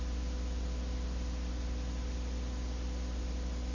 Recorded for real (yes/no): yes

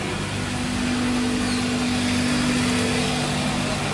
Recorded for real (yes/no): yes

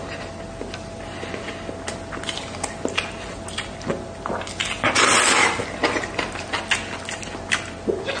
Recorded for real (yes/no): yes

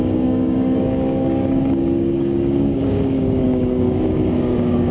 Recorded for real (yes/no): no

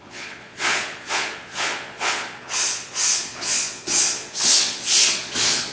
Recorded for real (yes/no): no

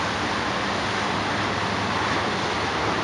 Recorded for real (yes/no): yes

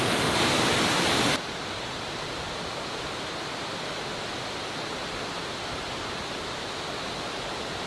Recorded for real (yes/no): yes